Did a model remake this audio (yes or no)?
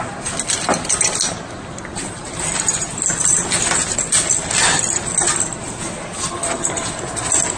no